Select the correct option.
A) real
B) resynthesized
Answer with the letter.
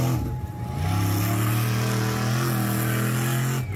A